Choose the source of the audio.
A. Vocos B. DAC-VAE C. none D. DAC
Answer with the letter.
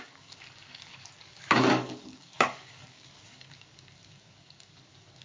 D